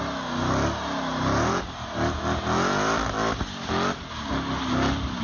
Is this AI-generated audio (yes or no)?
no